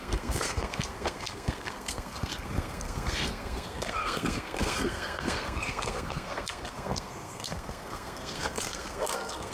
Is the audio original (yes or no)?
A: no